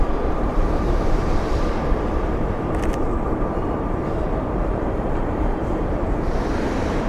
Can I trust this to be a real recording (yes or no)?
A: no